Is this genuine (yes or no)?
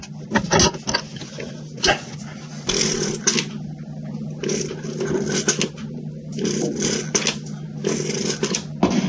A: yes